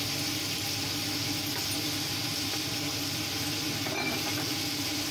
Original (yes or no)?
yes